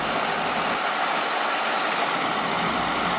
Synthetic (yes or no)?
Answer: no